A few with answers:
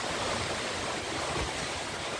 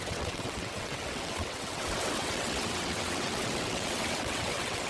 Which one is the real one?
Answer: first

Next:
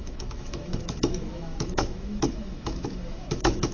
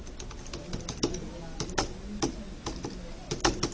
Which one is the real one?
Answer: second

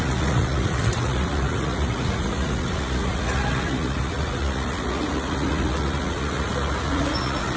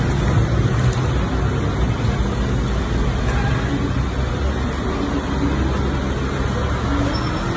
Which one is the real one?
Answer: second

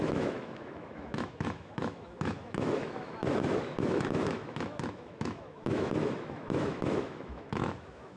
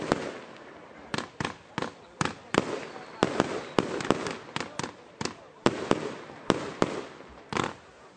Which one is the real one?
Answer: second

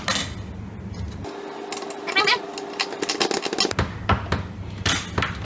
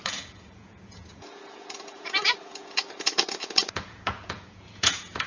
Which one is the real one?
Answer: first